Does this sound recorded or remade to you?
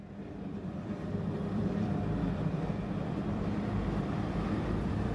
remade